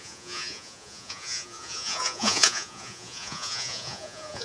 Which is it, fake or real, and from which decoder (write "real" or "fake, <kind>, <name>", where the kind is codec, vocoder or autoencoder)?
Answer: fake, vocoder, Vocos